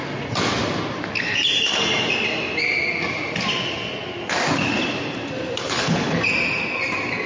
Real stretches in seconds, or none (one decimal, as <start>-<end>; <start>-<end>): 0.0-5.6; 6.2-7.3